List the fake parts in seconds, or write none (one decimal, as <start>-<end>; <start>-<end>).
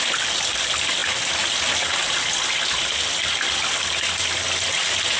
none